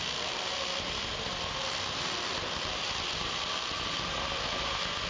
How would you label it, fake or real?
real